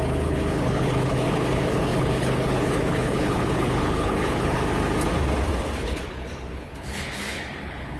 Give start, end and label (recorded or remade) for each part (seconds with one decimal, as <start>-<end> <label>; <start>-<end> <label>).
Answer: 0.0-4.6 remade; 4.6-5.8 recorded; 5.8-8.0 remade